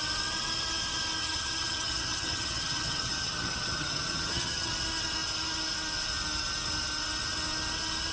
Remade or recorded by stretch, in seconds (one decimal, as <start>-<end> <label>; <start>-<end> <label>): 0.0-1.2 recorded; 1.2-4.7 remade; 4.7-8.1 recorded